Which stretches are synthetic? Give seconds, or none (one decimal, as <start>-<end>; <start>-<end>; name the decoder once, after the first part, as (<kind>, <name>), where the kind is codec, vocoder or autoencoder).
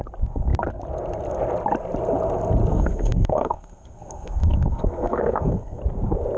2.7-5.8 (codec, SNAC)